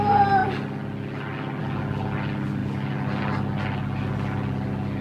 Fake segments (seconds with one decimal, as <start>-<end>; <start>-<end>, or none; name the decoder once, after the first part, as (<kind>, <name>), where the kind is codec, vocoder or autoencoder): none

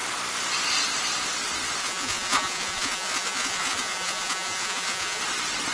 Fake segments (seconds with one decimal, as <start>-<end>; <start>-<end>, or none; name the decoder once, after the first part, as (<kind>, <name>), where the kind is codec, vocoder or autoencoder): 1.8-5.2 (vocoder, Vocos)

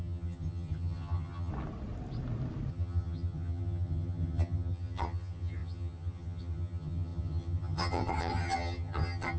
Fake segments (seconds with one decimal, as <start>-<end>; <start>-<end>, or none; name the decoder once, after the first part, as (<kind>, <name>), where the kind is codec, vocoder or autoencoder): 0.0-1.5 (vocoder, HiFi-GAN); 2.7-9.4

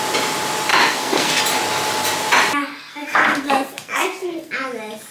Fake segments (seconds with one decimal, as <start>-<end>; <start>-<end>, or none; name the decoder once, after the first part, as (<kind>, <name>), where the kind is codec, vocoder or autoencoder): 0.7-1.4 (codec, SNAC); 2.6-4.5